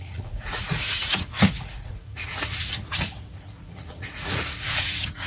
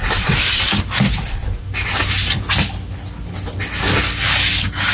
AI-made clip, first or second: first